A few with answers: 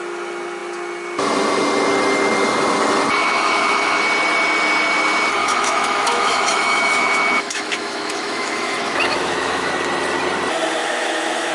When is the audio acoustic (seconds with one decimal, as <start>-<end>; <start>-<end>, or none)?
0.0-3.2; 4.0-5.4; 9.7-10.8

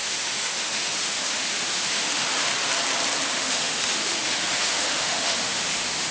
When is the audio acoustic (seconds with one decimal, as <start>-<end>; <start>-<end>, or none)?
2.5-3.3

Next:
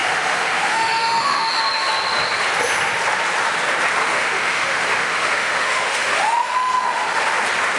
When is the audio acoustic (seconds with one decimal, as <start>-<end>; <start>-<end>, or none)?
1.6-4.0; 7.2-7.8

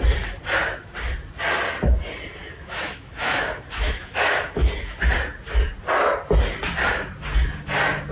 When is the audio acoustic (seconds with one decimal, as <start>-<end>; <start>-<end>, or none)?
0.0-2.4; 4.7-8.1